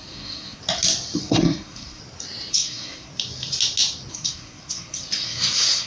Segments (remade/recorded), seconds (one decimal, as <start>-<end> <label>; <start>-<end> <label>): 0.0-0.6 remade; 0.6-1.2 recorded; 1.2-2.0 remade; 2.0-2.5 recorded; 2.5-3.1 remade; 3.1-4.1 recorded; 4.1-5.9 remade